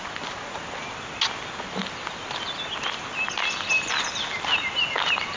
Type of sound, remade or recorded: recorded